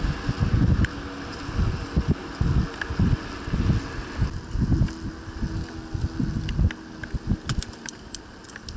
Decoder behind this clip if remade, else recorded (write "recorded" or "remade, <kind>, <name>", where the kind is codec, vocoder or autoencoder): recorded